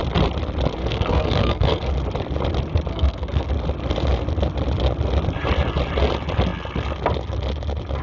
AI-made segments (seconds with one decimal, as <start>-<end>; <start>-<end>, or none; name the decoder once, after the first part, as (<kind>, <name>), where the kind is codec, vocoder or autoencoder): 0.8-1.9 (codec, SNAC); 2.9-3.5